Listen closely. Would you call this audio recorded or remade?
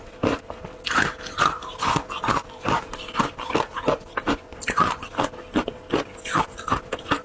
recorded